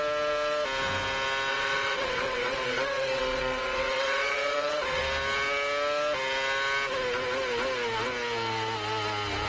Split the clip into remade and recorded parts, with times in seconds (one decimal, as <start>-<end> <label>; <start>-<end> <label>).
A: 0.0-1.5 recorded; 1.5-5.0 remade; 5.0-9.5 recorded